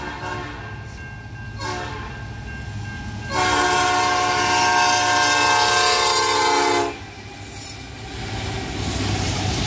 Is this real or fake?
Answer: real